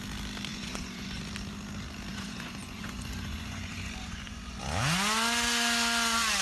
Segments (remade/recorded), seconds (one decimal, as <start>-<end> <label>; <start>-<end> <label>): 0.0-0.5 recorded; 0.5-1.2 remade; 1.2-2.1 recorded; 2.1-4.6 remade; 4.6-6.4 recorded